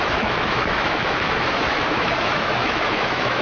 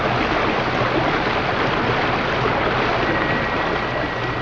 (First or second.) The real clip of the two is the second